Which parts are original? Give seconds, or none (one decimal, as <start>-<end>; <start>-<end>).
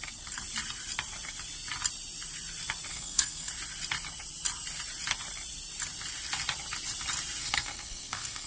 0.0-2.9; 3.5-7.4